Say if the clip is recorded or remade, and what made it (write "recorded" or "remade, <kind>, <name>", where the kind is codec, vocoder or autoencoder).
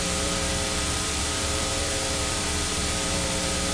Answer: remade, vocoder, BigVGAN v2